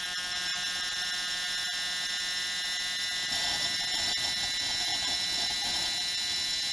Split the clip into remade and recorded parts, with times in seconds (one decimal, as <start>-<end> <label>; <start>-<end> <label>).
0.0-6.7 recorded